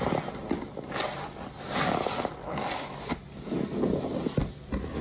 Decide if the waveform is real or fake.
real